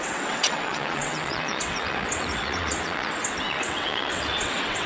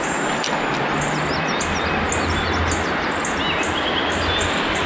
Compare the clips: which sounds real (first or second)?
second